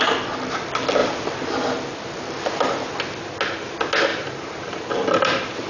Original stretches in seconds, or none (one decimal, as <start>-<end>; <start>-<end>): 0.0-4.1